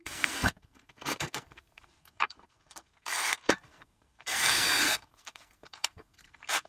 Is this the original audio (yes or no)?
no